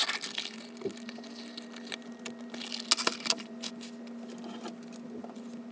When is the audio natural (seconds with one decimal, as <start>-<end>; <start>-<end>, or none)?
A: 0.0-5.7